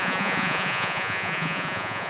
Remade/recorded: remade